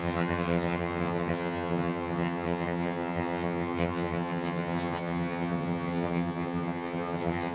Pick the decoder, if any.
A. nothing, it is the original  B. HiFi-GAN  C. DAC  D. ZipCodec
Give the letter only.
B